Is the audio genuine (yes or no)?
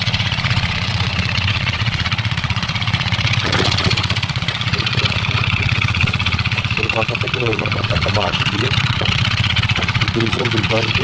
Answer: no